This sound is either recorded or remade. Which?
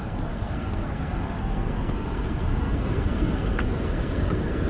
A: remade